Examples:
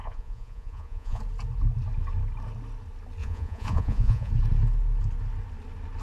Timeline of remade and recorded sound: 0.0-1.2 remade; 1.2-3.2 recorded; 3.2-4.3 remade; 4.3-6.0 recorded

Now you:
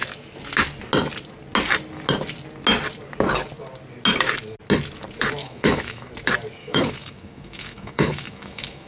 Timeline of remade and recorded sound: 0.0-5.4 recorded; 5.4-6.1 remade; 6.1-6.6 recorded; 6.6-8.9 remade